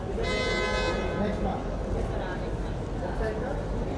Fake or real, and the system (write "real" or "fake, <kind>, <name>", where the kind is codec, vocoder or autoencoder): real